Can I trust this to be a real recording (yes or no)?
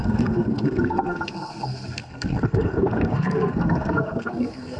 no